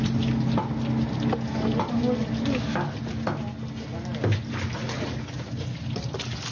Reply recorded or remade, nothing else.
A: recorded